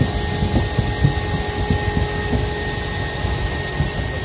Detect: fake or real real